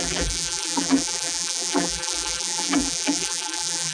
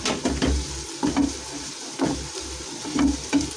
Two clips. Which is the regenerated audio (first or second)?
first